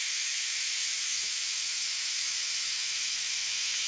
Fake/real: fake